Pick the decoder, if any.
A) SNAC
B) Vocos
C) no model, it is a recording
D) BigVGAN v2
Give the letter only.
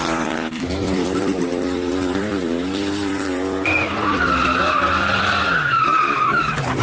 D